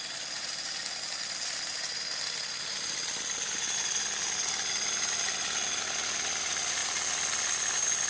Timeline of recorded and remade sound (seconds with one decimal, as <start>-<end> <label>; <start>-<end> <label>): 0.0-8.1 recorded